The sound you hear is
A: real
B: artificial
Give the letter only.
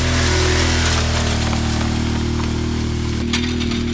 A